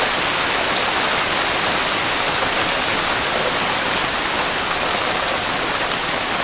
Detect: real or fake real